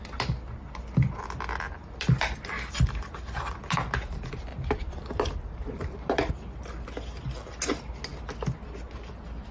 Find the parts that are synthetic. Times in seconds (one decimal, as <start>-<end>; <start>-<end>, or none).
4.5-6.3